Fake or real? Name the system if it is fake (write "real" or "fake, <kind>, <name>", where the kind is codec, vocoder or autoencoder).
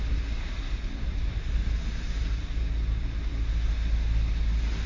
real